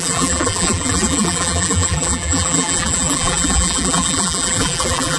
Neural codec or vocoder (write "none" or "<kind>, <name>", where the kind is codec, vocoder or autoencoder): vocoder, BigVGAN v2